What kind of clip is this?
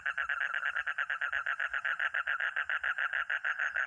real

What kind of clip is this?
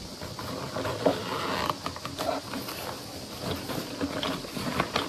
real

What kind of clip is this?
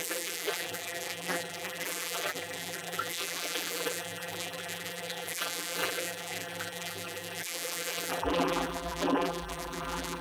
fake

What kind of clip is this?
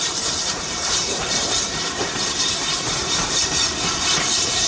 fake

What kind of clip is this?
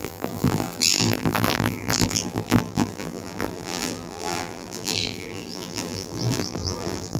fake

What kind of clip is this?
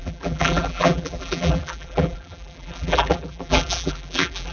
fake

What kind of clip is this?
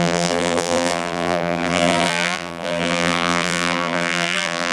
fake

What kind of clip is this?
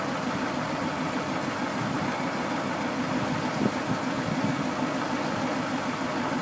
real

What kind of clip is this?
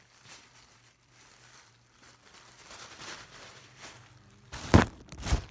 fake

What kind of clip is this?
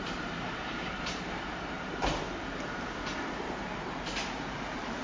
fake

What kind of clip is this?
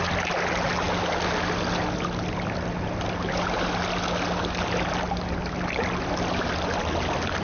real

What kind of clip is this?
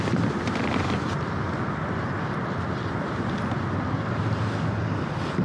real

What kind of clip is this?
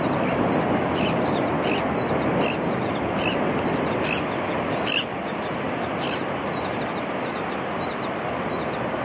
real